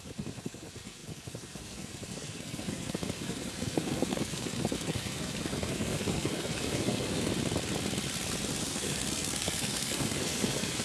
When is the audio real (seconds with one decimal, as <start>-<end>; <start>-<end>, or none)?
7.3-8.6